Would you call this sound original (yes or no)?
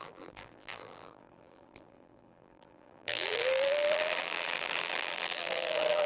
no